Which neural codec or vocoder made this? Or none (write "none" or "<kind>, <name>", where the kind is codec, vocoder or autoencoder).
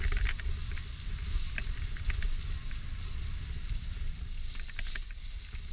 none